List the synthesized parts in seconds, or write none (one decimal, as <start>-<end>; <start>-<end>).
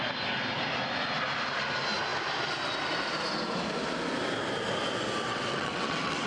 5.3-6.3